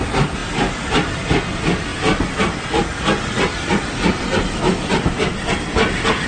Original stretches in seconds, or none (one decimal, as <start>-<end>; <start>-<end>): 0.0-6.3